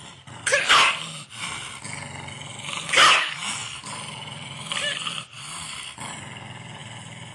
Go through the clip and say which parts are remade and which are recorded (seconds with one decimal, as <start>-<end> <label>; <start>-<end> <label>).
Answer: 0.0-3.6 recorded; 3.6-5.4 remade; 5.4-6.8 recorded; 6.8-7.3 remade